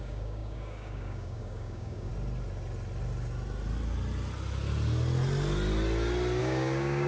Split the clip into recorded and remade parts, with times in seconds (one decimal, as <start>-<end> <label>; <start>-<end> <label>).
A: 0.0-2.1 remade; 2.1-6.4 recorded; 6.4-7.1 remade